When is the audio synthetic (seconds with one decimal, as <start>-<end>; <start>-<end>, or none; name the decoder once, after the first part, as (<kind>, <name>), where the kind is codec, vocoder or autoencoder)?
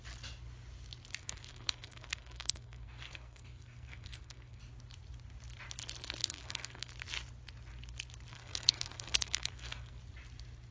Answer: 1.2-4.6 (codec, SNAC); 6.2-6.9; 8.3-10.0